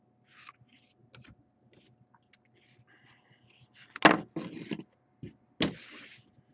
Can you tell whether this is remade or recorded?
recorded